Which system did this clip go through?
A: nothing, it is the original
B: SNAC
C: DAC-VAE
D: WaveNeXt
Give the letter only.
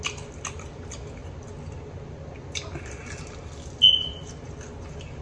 A